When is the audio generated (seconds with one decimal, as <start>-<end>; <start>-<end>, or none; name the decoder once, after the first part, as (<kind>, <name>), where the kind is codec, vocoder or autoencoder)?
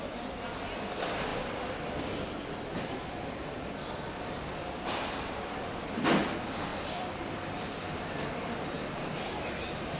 6.7-9.4 (vocoder, BigVGAN v2)